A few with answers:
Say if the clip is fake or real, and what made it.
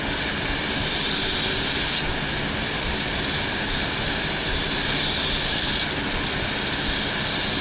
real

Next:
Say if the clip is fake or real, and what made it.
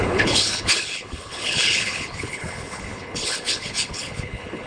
fake, codec, HILCodec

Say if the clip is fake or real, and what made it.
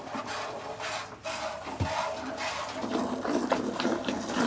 real